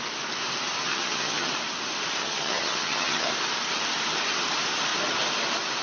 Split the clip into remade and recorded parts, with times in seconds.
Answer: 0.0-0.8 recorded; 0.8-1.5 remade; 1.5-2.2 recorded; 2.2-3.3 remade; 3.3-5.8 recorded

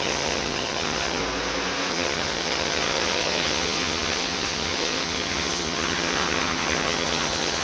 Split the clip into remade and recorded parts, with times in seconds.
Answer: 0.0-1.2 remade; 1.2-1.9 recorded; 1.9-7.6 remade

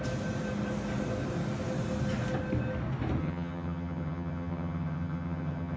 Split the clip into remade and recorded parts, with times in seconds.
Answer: 0.0-3.2 recorded; 3.2-5.8 remade

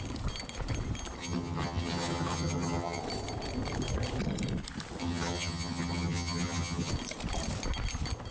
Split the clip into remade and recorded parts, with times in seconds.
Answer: 0.0-1.2 recorded; 1.2-3.0 remade; 3.0-5.0 recorded; 5.0-6.9 remade; 6.9-8.3 recorded

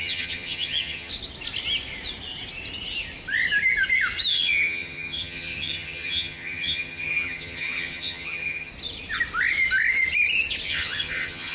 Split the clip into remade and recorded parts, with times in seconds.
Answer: 0.0-1.1 remade; 1.1-4.3 recorded; 4.3-8.7 remade; 8.7-10.7 recorded; 10.7-11.5 remade

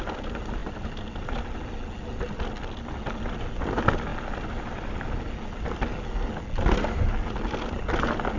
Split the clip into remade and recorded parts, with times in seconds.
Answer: 0.0-8.4 recorded